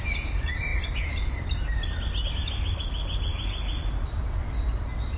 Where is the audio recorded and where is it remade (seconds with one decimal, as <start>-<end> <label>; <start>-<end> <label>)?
0.0-5.2 recorded